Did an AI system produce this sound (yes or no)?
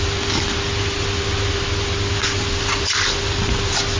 no